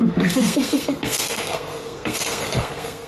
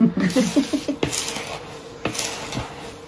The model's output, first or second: first